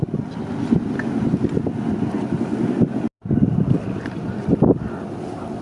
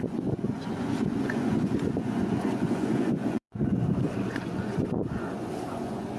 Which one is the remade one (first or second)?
second